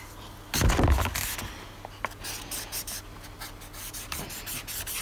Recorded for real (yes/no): yes